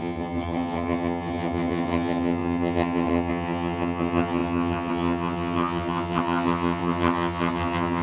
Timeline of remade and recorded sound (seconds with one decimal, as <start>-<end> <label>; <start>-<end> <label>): 0.0-8.0 remade